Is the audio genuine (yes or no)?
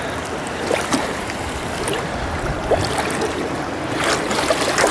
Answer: yes